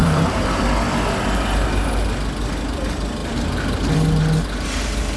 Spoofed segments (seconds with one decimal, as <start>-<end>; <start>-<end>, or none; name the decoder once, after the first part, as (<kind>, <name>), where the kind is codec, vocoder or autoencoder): 0.0-0.6 (vocoder, BigVGAN v2)